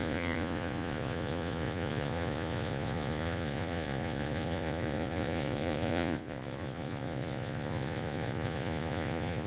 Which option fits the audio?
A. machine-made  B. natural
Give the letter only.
A